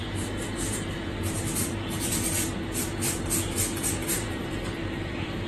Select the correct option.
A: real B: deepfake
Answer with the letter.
B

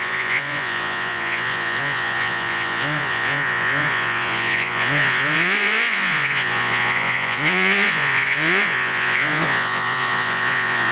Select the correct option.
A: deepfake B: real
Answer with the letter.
A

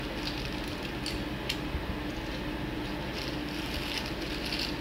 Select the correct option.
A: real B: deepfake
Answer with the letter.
A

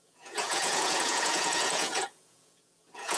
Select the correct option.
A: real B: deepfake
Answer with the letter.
B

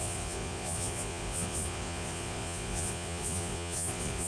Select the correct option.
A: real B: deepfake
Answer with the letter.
B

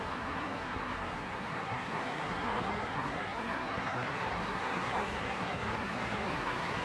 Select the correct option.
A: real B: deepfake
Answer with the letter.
B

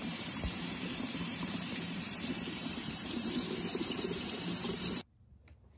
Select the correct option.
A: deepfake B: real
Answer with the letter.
A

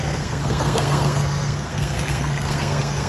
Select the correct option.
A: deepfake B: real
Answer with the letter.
A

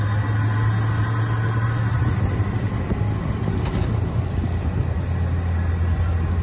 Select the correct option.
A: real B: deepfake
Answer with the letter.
A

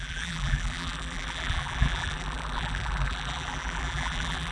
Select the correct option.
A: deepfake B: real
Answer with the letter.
A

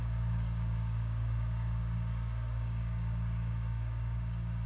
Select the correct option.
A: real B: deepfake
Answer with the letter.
B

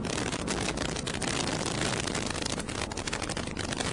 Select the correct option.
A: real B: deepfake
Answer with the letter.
A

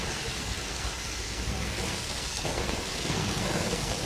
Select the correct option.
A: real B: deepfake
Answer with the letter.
B